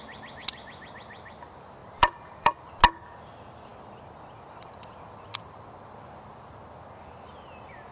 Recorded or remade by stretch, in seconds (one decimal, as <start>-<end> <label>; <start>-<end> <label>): 0.0-1.8 recorded; 1.8-2.7 remade; 2.7-7.9 recorded

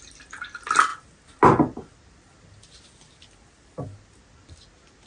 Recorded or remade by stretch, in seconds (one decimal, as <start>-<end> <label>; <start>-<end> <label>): 0.0-5.1 recorded

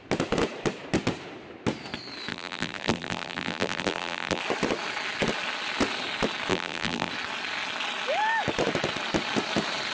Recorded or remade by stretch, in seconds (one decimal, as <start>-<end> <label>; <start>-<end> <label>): 0.0-2.3 recorded; 2.3-4.4 remade; 4.4-6.5 recorded; 6.5-7.1 remade; 7.1-9.9 recorded